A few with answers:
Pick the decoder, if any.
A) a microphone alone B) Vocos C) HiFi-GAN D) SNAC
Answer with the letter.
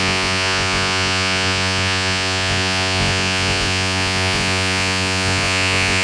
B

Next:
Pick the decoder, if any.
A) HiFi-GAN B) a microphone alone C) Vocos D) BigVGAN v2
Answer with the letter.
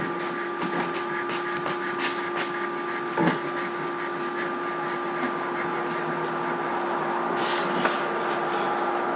B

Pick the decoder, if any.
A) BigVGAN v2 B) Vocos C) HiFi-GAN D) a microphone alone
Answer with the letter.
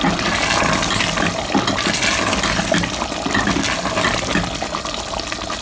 D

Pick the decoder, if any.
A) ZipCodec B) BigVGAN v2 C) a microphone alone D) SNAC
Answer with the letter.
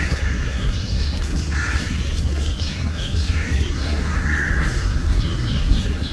D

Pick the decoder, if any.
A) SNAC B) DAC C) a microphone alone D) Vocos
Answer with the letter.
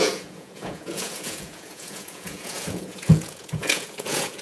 D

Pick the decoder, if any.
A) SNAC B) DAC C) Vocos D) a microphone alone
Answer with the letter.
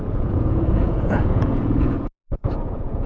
C